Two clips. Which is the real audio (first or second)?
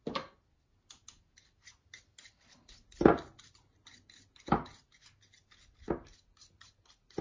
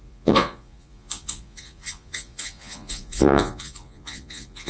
first